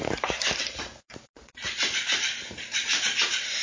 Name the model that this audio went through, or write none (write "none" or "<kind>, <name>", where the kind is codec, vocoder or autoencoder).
vocoder, BigVGAN v2